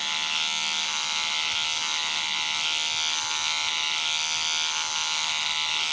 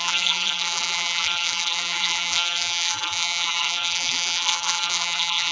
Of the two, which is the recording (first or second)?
first